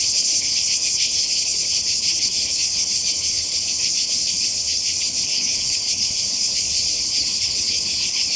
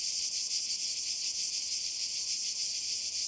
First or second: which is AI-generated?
first